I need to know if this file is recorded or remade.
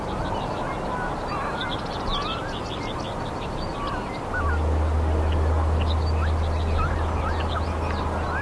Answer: recorded